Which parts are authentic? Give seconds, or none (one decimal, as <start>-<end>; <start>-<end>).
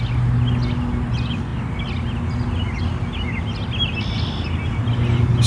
0.0-5.5